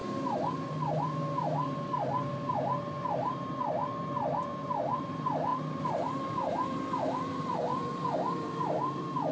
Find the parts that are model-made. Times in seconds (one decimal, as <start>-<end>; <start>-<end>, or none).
4.6-9.3